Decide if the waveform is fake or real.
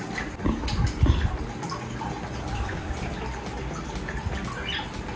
real